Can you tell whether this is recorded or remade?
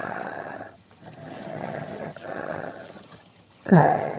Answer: remade